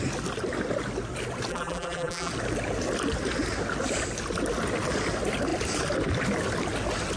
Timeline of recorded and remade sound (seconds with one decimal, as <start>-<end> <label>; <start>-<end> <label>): 0.0-1.5 recorded; 1.5-2.3 remade; 2.3-7.2 recorded